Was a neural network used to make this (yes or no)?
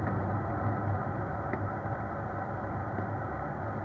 no